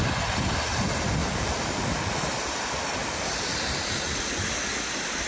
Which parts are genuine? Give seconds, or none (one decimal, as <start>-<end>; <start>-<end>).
0.0-1.2; 4.2-5.3